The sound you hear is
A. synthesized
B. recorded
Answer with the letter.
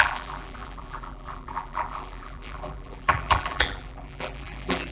A